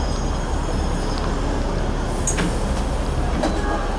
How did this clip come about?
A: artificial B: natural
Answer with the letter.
B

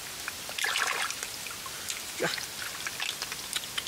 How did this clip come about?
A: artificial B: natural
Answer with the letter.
B